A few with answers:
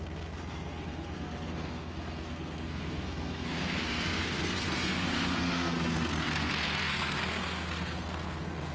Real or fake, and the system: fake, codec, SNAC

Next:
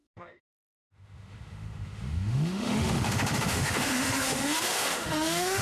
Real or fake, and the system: fake, autoencoder, DAC-VAE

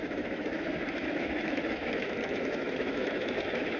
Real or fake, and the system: fake, autoencoder, DAC-VAE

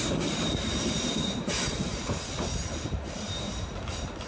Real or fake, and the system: fake, vocoder, BigVGAN v2